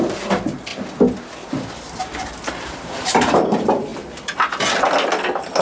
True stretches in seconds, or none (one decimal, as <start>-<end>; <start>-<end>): 0.7-2.0; 3.9-5.6